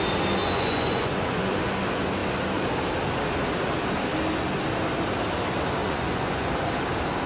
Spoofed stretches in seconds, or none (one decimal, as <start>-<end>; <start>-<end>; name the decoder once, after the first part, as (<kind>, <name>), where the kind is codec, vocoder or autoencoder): 0.4-1.6 (vocoder, Vocos); 5.8-6.5